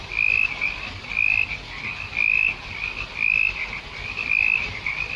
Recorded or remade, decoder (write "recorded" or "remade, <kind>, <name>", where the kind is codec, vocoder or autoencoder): recorded